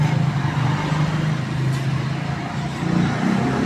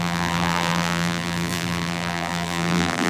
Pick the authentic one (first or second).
first